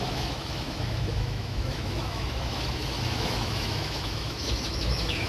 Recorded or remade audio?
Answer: remade